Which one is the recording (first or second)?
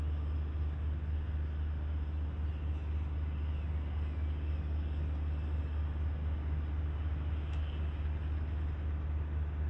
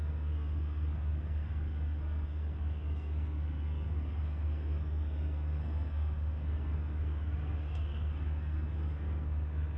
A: first